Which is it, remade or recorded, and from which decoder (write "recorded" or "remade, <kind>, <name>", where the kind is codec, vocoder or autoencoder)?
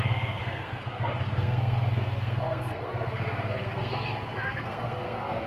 remade, codec, SNAC